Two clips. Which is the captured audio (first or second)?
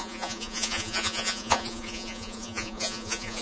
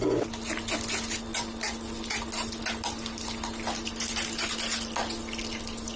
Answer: second